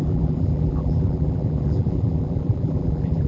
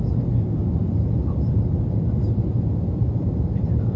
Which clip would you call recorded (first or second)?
second